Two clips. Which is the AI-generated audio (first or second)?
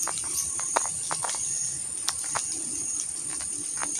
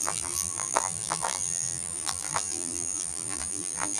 second